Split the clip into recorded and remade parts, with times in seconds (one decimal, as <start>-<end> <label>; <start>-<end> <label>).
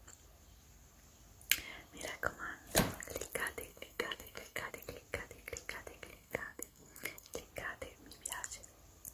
0.0-3.7 recorded; 3.7-4.7 remade; 4.7-6.1 recorded; 6.1-7.4 remade; 7.4-9.1 recorded